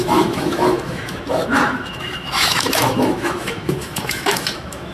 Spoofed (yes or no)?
yes